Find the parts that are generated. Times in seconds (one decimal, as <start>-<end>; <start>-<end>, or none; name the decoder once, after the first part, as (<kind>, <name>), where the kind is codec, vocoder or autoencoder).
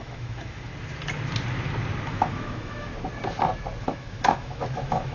0.0-0.7 (autoencoder, DAC-VAE); 2.1-2.9; 3.8-5.1